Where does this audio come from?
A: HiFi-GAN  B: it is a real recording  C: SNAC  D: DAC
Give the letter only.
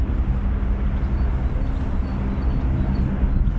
B